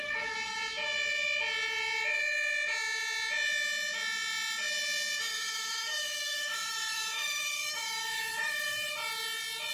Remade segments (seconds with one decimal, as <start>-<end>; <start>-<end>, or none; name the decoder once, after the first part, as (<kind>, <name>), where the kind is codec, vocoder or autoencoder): 5.3-8.9 (autoencoder, DAC-VAE)

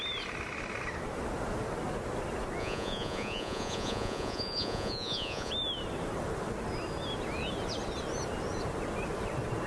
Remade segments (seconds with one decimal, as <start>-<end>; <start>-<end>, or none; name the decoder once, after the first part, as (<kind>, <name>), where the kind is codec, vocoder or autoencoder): 2.6-5.5 (vocoder, Vocos)

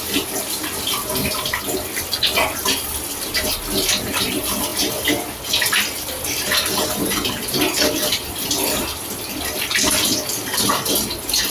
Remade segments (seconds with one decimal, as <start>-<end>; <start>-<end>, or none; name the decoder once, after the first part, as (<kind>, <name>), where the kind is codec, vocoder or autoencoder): none

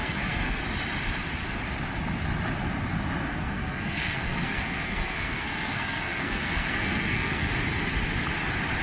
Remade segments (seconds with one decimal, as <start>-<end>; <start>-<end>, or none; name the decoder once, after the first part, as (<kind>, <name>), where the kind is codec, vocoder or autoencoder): 0.0-0.6 (codec, SNAC); 3.3-7.5